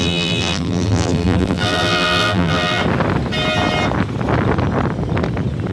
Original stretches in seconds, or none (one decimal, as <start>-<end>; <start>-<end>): 2.8-5.7